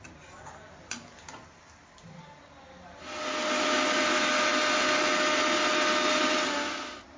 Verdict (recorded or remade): recorded